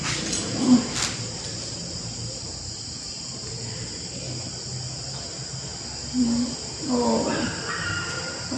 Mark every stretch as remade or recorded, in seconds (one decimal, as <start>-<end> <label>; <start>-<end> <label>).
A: 0.0-8.6 recorded